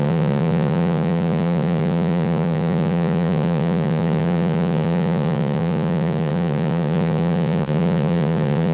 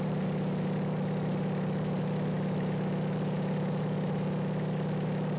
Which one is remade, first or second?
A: first